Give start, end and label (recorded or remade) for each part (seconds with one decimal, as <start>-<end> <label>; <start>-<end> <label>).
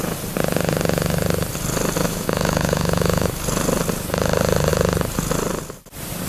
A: 0.0-2.0 recorded; 2.0-3.3 remade; 3.3-6.3 recorded